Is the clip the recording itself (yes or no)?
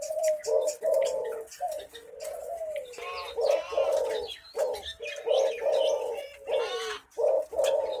yes